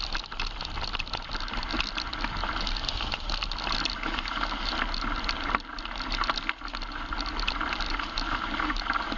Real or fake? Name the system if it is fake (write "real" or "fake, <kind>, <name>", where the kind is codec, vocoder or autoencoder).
real